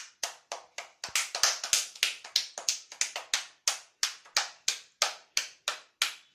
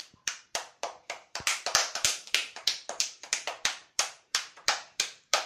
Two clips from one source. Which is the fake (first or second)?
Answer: second